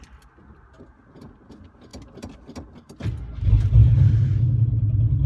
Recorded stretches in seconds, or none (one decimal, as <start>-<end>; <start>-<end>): 0.0-5.3